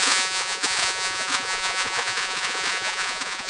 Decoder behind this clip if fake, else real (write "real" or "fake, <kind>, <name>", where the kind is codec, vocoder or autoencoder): fake, vocoder, Vocos